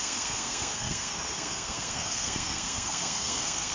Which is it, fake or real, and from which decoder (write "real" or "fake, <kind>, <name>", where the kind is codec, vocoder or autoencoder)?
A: fake, codec, SNAC